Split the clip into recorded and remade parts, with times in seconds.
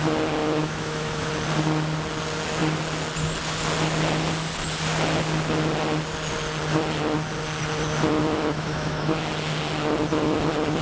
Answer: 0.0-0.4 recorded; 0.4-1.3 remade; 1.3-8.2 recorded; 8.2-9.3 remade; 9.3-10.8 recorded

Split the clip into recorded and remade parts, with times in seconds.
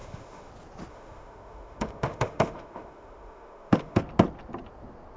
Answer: 0.0-0.5 remade; 0.5-0.9 recorded; 0.9-4.0 remade; 4.0-5.2 recorded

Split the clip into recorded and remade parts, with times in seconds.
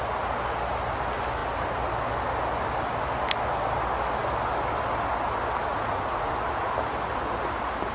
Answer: 0.0-5.7 recorded; 5.7-6.3 remade; 6.3-7.9 recorded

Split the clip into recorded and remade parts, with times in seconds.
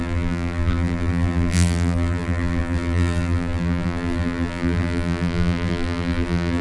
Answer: 0.0-6.6 remade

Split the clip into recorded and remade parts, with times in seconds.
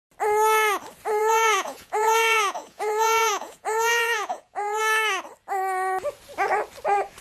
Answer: 0.0-1.2 recorded; 1.2-4.8 remade; 4.8-7.2 recorded